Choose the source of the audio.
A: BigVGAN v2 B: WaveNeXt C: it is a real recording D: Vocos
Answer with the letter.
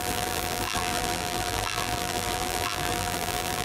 A